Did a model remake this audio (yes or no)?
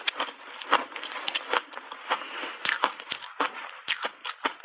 no